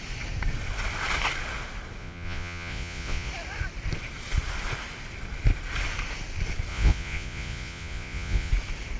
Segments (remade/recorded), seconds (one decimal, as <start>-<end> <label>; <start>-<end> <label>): 0.0-2.0 recorded; 2.0-3.3 remade; 3.3-6.7 recorded; 6.7-8.5 remade; 8.5-9.0 recorded